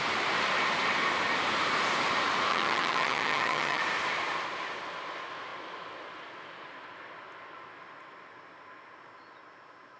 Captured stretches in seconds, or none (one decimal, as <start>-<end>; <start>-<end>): 0.0-2.5; 3.8-10.0